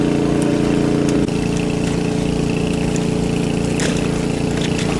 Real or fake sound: real